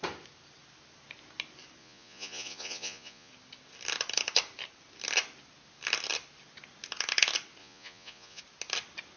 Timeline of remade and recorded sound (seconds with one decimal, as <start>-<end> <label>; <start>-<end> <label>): 0.0-1.8 recorded; 1.8-3.3 remade; 3.3-7.6 recorded; 7.6-8.4 remade; 8.4-9.2 recorded